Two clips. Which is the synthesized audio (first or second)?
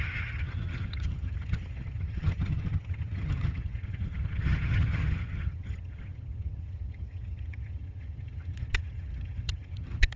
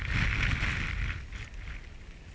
first